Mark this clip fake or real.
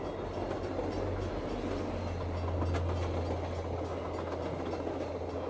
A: real